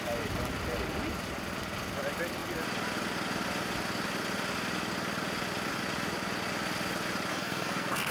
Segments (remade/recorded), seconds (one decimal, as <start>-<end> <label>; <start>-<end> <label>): 0.0-7.3 recorded; 7.3-8.1 remade